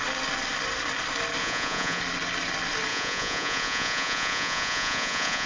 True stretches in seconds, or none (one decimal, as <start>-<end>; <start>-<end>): 0.0-1.4; 2.0-2.9